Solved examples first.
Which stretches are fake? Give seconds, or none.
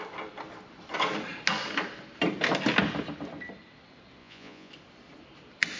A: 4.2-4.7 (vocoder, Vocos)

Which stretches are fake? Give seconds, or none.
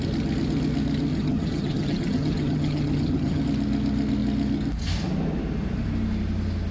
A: 1.1-3.4 (vocoder, HiFi-GAN)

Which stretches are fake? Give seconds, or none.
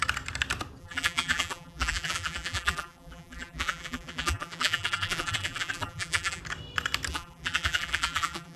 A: 0.8-6.4 (vocoder, BigVGAN v2); 7.1-8.6